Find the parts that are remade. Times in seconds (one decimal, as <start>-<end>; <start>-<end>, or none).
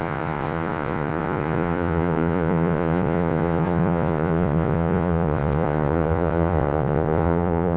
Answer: 0.0-7.8